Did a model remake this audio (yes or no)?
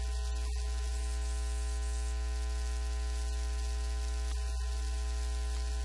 no